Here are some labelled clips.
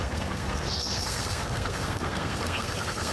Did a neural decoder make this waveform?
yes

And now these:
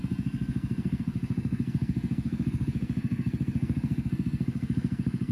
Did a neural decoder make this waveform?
yes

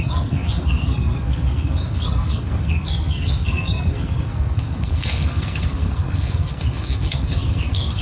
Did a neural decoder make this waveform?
yes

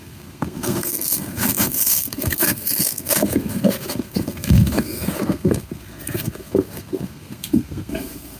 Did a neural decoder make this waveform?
yes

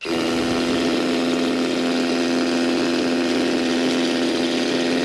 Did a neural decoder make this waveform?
no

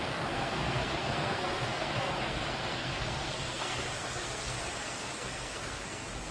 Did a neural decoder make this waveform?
yes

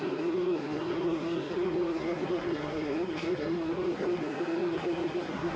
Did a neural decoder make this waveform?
yes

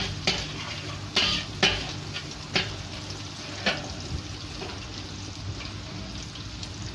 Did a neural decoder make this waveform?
no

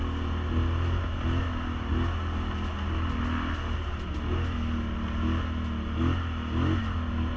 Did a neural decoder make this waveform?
no